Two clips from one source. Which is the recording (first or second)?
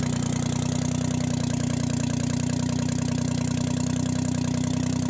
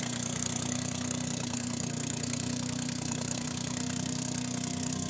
first